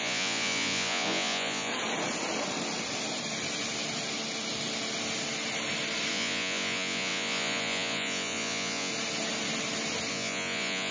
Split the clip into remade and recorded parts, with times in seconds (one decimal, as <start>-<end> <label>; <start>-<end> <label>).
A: 0.0-1.7 remade; 1.7-6.1 recorded; 6.1-8.9 remade; 8.9-10.1 recorded; 10.1-10.9 remade